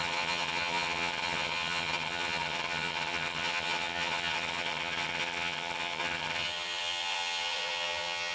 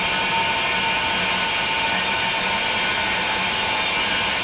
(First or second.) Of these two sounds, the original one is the second